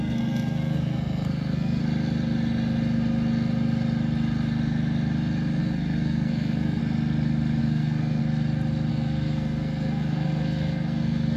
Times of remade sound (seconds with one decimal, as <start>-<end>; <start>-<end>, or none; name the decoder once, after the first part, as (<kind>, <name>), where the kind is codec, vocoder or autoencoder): 0.0-1.8 (codec, SNAC); 5.6-6.8; 7.6-8.2; 8.9-11.4